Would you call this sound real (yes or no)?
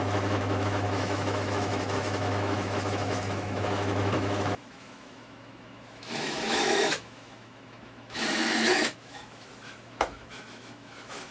no